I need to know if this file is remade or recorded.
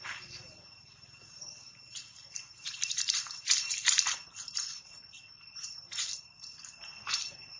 remade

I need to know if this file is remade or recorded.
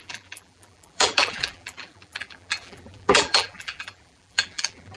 remade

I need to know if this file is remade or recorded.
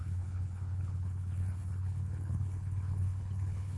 remade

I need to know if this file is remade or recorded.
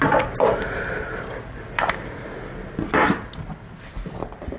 recorded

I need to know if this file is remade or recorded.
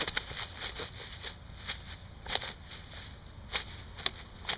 recorded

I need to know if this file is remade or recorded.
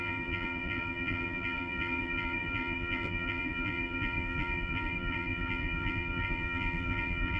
remade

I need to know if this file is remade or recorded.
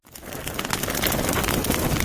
recorded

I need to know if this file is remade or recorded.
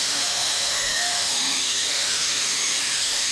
remade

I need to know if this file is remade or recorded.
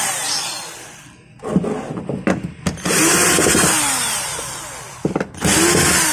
recorded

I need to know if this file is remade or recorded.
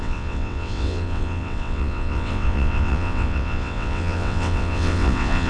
remade